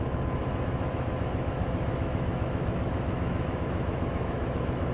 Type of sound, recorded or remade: remade